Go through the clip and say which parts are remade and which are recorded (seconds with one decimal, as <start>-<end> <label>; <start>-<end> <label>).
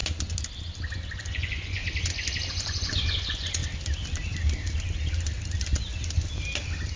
0.0-1.2 recorded; 1.2-1.8 remade; 1.8-2.5 recorded; 2.5-3.6 remade; 3.6-7.0 recorded